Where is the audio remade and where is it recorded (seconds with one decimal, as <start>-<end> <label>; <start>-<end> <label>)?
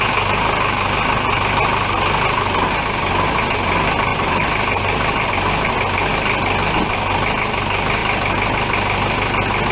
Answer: 0.0-4.1 recorded; 4.1-5.3 remade; 5.3-9.7 recorded